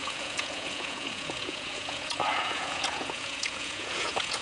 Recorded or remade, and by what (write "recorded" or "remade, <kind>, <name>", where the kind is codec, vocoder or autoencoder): remade, vocoder, Vocos